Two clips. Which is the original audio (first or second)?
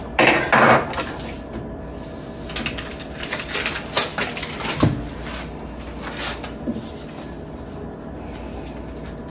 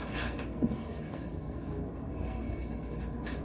first